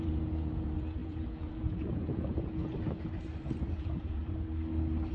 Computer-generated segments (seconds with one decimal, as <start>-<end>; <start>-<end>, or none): 0.0-2.6; 3.6-4.2